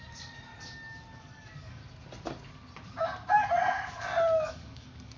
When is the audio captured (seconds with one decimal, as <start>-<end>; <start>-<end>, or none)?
0.5-1.2; 1.8-4.5